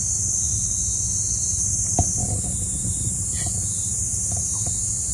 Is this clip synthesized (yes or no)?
no